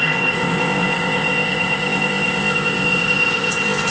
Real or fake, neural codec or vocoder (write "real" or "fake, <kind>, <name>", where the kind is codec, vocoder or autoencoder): fake, codec, ZipCodec